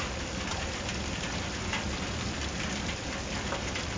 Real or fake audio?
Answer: real